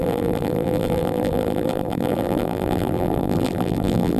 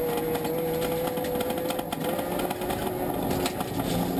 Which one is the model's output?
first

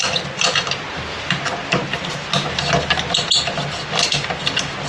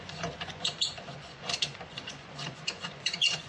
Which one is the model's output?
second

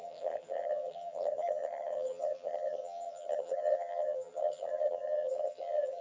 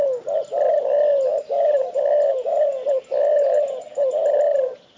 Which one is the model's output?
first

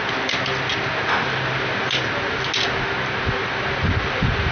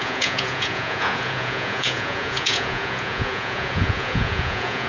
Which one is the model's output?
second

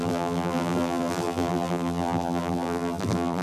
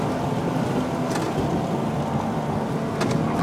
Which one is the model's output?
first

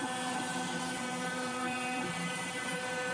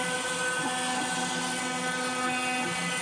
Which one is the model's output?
first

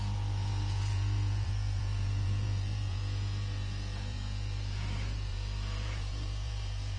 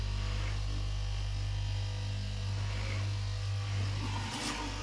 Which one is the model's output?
first